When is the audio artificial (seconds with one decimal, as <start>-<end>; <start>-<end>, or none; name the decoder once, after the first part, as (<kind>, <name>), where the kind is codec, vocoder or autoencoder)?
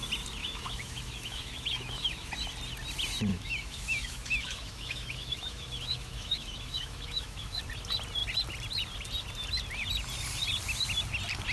0.4-2.3 (autoencoder, DAC-VAE); 3.3-7.6